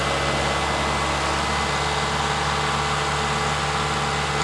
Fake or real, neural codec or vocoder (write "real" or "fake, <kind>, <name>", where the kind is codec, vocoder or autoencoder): real